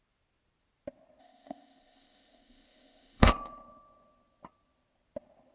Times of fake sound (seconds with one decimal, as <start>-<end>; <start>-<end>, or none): 1.2-3.3